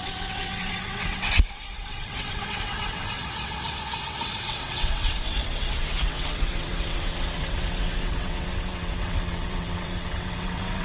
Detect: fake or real fake